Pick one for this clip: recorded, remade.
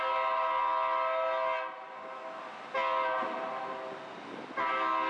recorded